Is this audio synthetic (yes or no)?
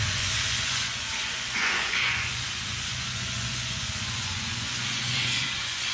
yes